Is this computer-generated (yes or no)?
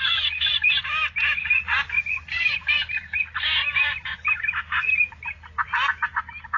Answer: no